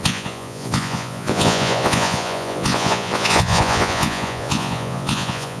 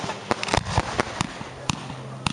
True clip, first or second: second